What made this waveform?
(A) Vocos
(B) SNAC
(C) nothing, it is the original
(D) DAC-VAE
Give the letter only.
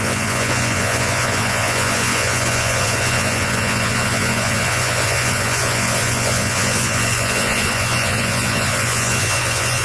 A